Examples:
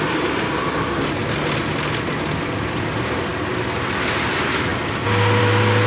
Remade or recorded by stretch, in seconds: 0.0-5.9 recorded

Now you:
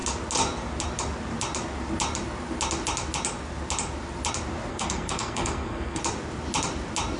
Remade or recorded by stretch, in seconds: 0.0-4.7 recorded; 4.7-6.0 remade; 6.0-7.2 recorded

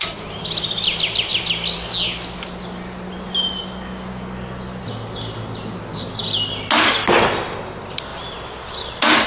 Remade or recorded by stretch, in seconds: 0.0-9.3 recorded

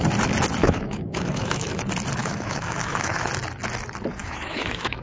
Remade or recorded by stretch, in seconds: 0.0-0.6 recorded; 0.6-1.8 remade; 1.8-2.2 recorded; 2.2-3.3 remade; 3.3-4.2 recorded; 4.2-5.0 remade

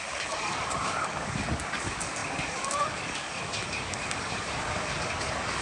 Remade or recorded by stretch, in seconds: 0.0-5.6 remade

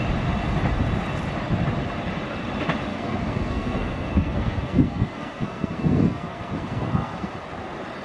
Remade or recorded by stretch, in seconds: 0.0-2.9 recorded; 2.9-7.3 remade; 7.3-8.0 recorded

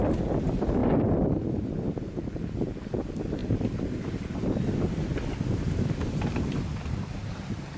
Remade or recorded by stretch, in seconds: 0.0-3.4 recorded; 3.4-4.6 remade; 4.6-7.8 recorded